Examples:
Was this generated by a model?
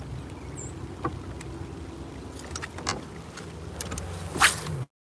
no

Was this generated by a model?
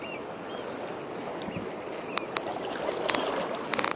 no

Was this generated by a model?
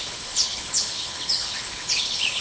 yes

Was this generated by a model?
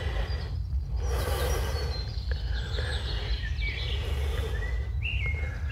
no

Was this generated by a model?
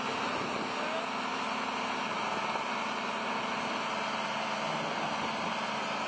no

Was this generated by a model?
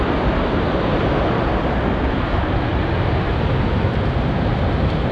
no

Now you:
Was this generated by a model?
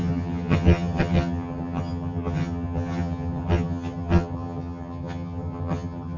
yes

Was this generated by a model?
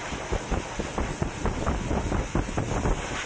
no